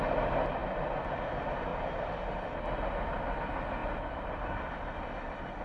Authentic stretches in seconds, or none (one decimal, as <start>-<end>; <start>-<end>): 0.0-1.7; 2.6-3.8; 4.4-5.6